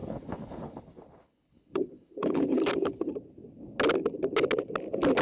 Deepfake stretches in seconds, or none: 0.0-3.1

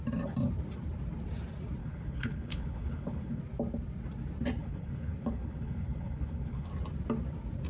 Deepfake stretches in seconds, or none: 1.8-3.4; 4.6-6.7

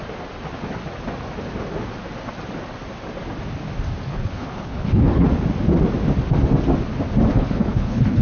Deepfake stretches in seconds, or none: 4.1-5.3; 7.3-8.2

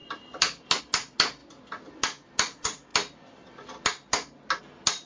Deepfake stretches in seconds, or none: none